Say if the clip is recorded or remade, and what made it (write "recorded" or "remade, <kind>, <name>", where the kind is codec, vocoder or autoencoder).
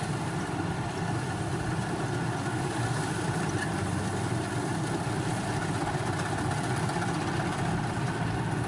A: recorded